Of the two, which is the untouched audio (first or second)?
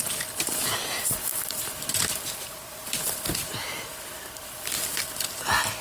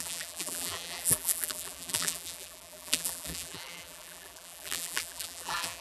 first